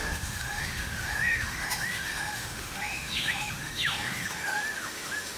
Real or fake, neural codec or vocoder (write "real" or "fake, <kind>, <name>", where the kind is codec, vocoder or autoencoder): fake, autoencoder, DAC-VAE